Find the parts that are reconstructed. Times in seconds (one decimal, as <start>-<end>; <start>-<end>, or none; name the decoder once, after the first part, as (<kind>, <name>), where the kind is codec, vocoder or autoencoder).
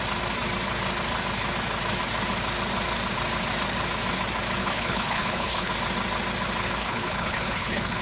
4.6-5.7 (codec, HILCodec); 6.8-8.0